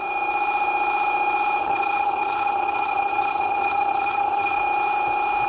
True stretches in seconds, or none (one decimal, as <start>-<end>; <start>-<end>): 0.0-1.6; 4.6-5.5